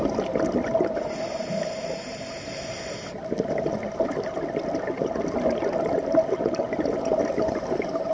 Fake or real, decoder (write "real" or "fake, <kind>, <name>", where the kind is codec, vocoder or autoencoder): real